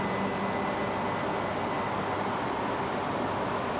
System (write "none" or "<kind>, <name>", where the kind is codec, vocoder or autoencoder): none